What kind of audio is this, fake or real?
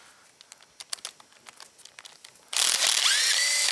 real